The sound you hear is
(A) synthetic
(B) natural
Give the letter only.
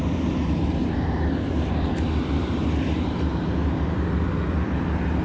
A